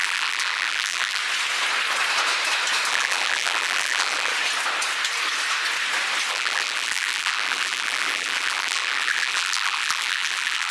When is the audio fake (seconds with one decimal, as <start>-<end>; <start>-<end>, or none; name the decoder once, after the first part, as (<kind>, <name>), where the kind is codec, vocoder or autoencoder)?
0.0-1.2 (vocoder, BigVGAN v2); 2.9-4.3; 6.3-10.7